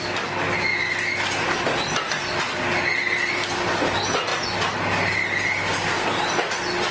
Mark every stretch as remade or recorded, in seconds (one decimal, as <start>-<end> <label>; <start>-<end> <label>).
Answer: 0.0-6.9 recorded